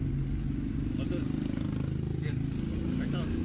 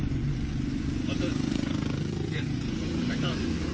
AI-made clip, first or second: second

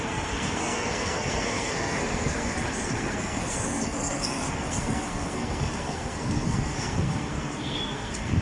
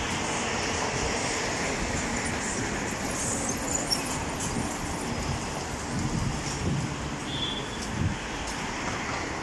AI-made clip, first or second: first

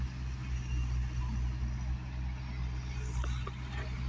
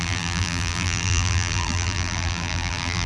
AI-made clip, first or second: second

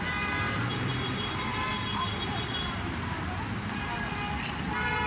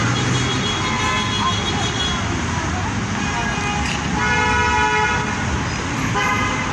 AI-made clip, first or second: first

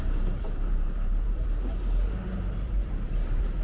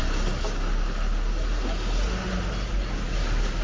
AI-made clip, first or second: first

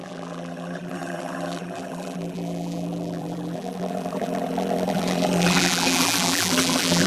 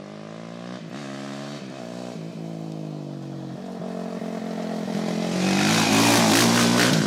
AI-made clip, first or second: first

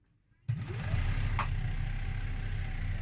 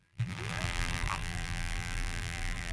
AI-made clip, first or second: second